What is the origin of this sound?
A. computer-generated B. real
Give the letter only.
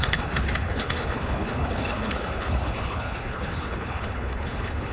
A